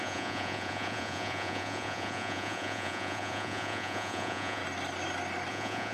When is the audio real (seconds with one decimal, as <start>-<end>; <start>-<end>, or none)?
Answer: 4.6-5.5